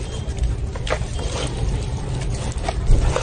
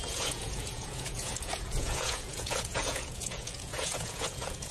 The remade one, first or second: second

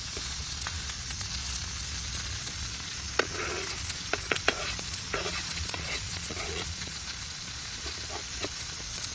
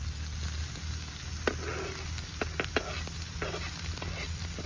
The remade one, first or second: first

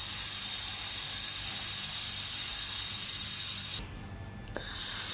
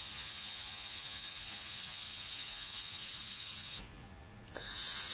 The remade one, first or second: second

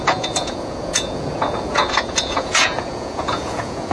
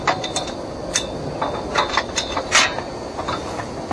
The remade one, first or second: first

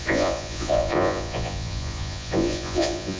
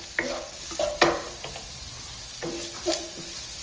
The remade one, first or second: first